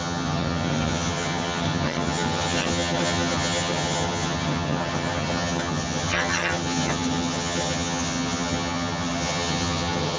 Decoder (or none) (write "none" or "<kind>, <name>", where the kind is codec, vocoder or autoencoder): vocoder, HiFi-GAN